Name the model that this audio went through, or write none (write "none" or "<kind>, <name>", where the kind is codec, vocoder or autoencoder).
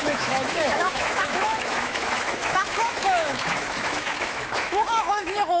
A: autoencoder, DAC-VAE